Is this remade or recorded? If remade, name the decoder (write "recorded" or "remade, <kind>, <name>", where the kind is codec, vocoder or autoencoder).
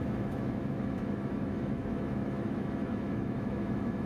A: remade, autoencoder, DAC-VAE